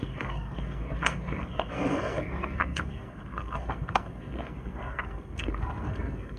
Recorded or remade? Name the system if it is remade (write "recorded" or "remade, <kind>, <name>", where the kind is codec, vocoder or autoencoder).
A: remade, codec, SNAC